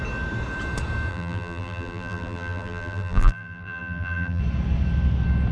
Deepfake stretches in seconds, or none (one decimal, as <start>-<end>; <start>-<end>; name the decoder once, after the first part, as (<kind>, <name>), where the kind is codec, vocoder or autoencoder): 1.1-4.4 (vocoder, BigVGAN v2)